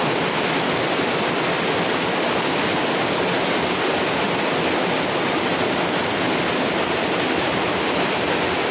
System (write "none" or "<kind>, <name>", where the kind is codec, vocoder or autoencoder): none